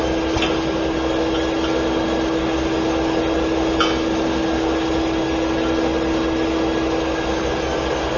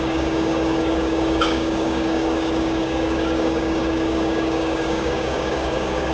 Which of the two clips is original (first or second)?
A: first